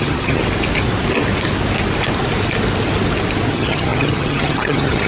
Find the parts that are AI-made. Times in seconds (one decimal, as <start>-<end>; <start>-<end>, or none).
0.0-0.4; 3.5-5.1